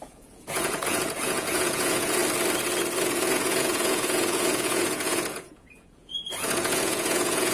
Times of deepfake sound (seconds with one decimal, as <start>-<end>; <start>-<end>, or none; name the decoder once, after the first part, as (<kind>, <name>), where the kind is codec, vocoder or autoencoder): 0.0-2.2 (vocoder, Vocos); 3.0-7.5